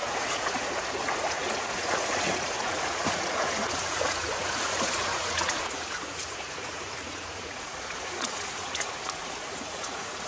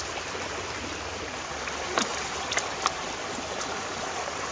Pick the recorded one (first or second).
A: second